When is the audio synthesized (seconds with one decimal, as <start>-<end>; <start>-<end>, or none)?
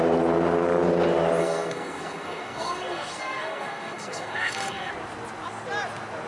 1.4-4.9